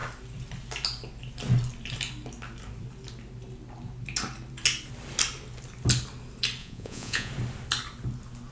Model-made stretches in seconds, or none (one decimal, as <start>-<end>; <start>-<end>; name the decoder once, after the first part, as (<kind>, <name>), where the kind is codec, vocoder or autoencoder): 6.6-7.3 (vocoder, Vocos)